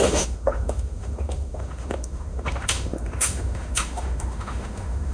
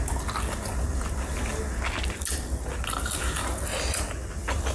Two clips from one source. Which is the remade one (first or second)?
first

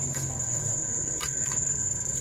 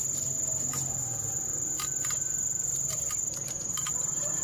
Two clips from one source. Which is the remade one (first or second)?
first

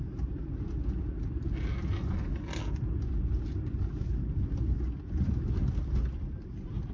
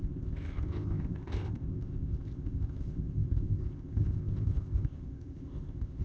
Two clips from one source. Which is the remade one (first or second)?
second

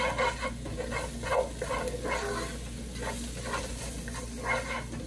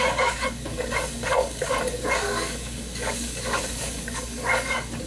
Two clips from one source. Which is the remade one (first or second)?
second